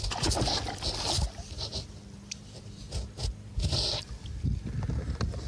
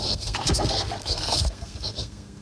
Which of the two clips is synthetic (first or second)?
second